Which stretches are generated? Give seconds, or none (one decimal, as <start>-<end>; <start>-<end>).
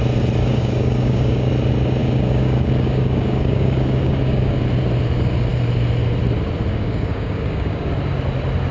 0.4-1.5; 2.0-4.6; 6.7-7.9